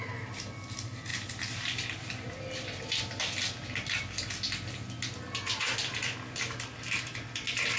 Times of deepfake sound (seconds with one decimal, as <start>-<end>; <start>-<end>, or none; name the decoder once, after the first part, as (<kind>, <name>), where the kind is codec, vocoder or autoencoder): none